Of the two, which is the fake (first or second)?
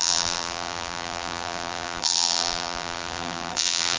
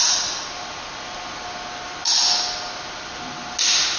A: first